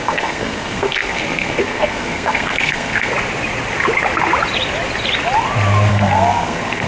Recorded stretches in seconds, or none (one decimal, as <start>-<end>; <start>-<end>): 3.1-5.9

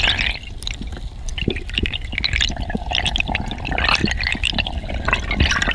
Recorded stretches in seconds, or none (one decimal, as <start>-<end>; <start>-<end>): 0.0-5.7